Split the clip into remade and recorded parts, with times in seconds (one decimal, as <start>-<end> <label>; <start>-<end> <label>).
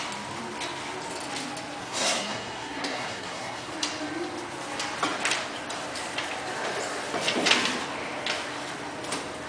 0.0-1.8 recorded; 1.8-3.7 remade; 3.7-9.5 recorded